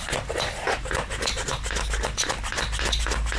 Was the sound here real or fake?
real